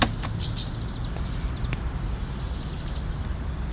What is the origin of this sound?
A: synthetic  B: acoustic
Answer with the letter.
B